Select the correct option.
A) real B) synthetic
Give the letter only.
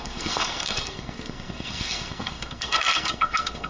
B